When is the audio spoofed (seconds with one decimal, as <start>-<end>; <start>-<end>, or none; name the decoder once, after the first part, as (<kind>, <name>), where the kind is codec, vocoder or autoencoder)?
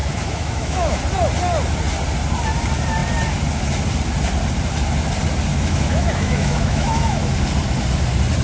0.0-1.0 (autoencoder, DAC-VAE); 5.5-7.3